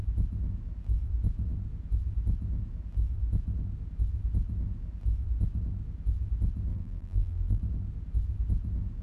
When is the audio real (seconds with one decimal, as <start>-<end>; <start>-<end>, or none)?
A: 0.0-6.7; 7.6-9.0